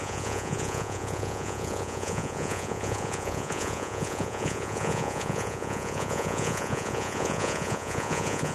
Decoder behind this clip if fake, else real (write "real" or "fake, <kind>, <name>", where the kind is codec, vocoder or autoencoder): fake, vocoder, Vocos